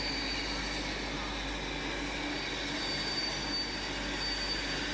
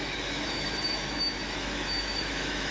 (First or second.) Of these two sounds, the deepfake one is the second